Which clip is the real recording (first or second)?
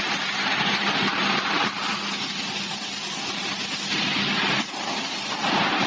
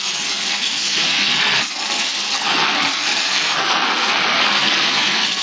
first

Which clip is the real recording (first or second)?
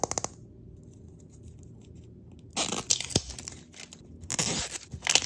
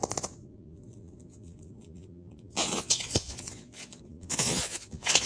first